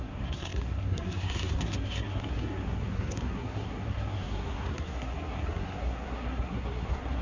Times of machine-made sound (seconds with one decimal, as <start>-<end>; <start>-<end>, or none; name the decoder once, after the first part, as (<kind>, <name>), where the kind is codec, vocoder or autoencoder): 0.0-7.2 (codec, SNAC)